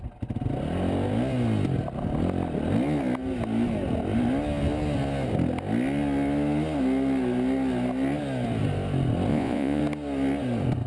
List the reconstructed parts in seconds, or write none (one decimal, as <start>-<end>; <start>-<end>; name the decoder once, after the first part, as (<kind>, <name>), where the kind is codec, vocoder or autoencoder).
9.3-9.8 (vocoder, Vocos)